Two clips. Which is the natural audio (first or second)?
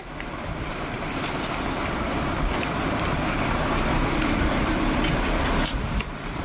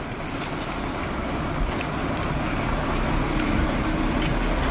second